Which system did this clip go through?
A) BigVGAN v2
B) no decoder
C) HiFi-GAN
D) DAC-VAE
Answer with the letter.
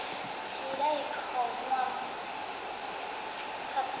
B